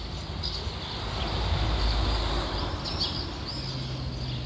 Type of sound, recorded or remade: recorded